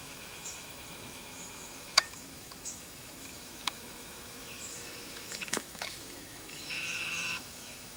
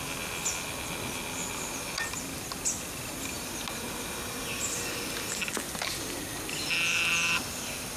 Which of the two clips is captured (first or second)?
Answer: second